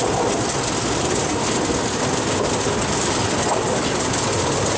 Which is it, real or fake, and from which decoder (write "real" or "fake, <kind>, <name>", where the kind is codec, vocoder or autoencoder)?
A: real